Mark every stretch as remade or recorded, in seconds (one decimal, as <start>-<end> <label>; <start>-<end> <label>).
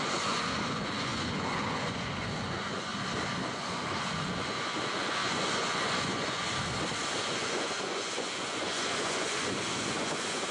0.0-2.9 remade; 2.9-3.5 recorded; 3.5-6.5 remade; 6.5-7.2 recorded; 7.2-10.5 remade